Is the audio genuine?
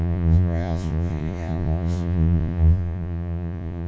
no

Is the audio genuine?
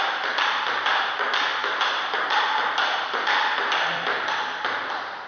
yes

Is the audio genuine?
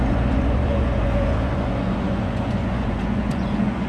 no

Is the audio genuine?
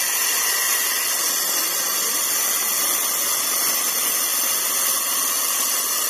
yes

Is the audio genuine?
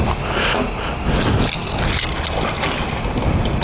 yes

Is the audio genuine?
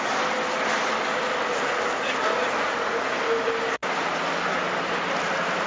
yes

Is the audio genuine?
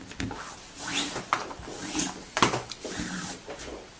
yes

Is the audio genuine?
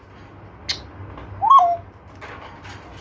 yes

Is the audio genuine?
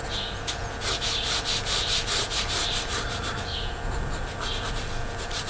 yes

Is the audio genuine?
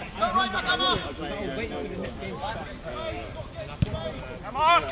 yes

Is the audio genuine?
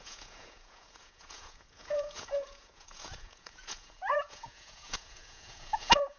no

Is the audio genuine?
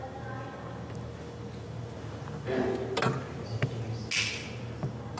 yes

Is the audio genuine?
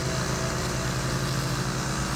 yes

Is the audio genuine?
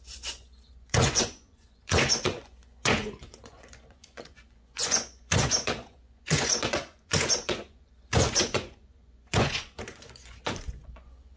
no